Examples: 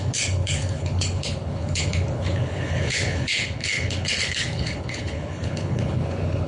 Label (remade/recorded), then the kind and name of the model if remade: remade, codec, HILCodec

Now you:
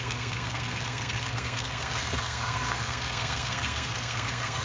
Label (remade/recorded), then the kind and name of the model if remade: remade, codec, SNAC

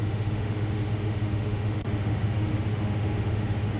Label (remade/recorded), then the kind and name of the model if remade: remade, autoencoder, DAC-VAE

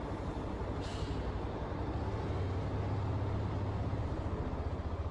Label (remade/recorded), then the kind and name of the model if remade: recorded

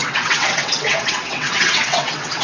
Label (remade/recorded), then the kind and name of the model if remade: remade, vocoder, WaveNeXt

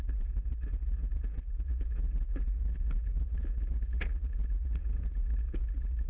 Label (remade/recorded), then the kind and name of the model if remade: remade, vocoder, Vocos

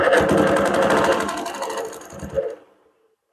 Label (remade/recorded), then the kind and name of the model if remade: recorded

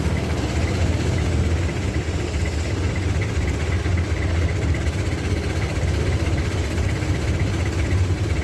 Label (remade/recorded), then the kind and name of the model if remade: recorded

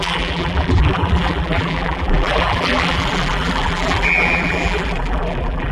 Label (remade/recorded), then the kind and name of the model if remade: remade, vocoder, BigVGAN v2